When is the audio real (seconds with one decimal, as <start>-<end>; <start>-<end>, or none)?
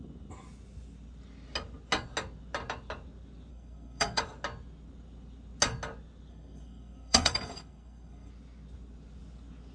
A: 0.0-3.5; 4.2-6.3; 8.3-9.7